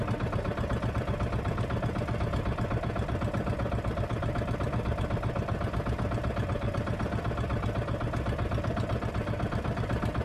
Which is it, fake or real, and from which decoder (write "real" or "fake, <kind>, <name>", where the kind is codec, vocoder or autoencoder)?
real